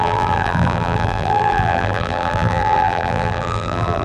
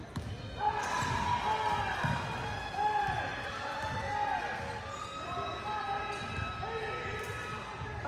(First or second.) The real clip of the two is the second